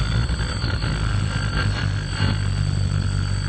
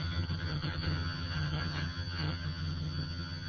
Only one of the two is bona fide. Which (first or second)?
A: first